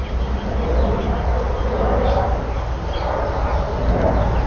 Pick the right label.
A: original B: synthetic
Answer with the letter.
A